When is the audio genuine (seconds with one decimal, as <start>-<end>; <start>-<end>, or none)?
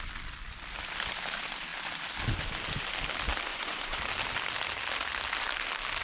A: 0.0-3.5; 4.0-6.0